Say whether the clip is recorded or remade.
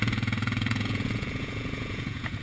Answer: remade